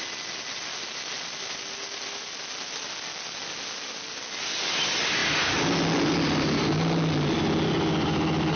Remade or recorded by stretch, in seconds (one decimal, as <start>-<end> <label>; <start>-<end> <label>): 0.0-8.6 recorded